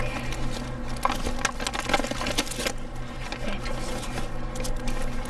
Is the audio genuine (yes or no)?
yes